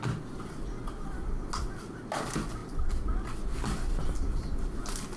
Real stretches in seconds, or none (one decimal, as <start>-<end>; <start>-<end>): 0.0-5.2